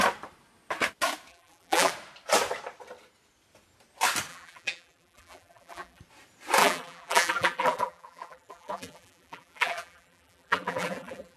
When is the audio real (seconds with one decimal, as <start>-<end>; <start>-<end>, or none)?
0.0-1.3; 1.9-4.3; 6.0-6.6